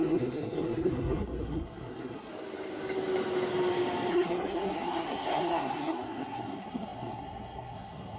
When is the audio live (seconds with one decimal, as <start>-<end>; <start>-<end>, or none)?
2.3-4.1